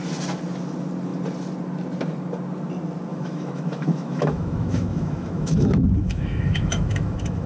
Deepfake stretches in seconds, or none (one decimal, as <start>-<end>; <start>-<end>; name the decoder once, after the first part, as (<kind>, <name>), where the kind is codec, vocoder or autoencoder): 3.1-7.5 (autoencoder, DAC-VAE)